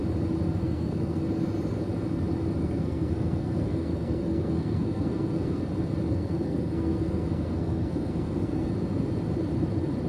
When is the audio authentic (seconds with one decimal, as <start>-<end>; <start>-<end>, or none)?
0.0-0.6; 1.2-2.6; 5.6-6.1; 8.7-10.1